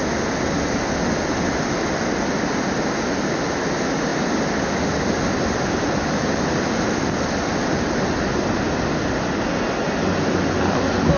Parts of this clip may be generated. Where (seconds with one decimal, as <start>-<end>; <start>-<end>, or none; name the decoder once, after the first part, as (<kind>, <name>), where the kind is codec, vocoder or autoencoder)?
none